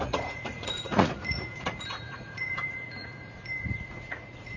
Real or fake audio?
fake